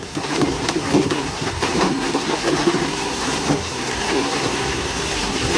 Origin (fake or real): fake